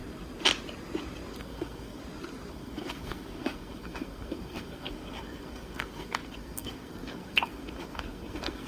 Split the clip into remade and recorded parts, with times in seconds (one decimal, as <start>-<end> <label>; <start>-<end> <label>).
0.0-1.4 recorded; 1.4-2.0 remade; 2.0-2.5 recorded; 2.5-8.7 remade